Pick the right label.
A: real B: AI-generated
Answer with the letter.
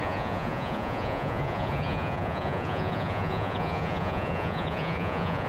B